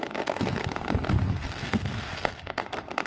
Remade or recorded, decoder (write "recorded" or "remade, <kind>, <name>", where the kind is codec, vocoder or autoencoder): remade, codec, SNAC